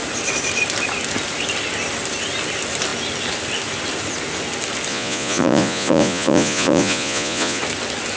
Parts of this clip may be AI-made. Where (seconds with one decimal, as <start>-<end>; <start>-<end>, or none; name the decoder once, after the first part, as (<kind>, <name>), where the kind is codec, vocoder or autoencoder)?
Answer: 4.9-7.6 (vocoder, Vocos)